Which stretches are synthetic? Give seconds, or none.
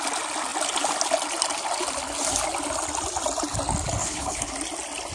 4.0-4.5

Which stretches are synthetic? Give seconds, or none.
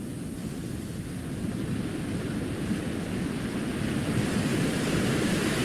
0.4-2.0; 4.5-5.6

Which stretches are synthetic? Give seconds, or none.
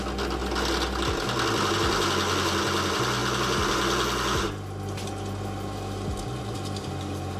none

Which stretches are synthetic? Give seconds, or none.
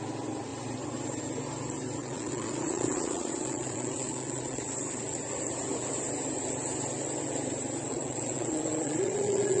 2.0-4.7; 7.9-9.6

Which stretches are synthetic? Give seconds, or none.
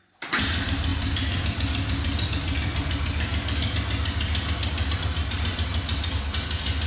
none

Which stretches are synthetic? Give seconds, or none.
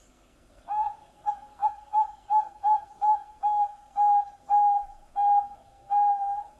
0.0-6.6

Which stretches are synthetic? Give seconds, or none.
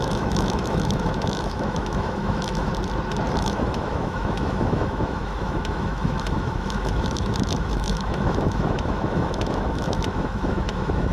0.0-2.7; 3.3-11.1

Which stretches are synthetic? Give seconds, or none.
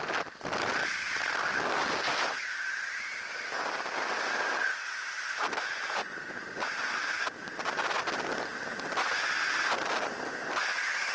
none